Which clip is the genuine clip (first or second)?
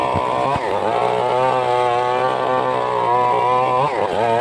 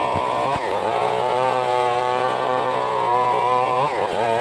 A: first